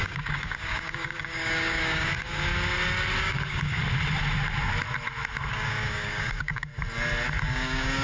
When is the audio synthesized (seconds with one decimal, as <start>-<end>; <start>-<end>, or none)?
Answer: 0.0-2.5; 3.2-3.8; 5.5-6.7; 7.4-8.0